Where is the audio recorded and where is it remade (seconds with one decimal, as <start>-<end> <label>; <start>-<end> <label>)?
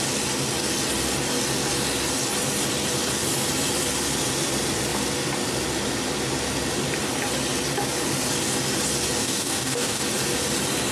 0.0-9.2 recorded; 9.2-10.0 remade; 10.0-10.9 recorded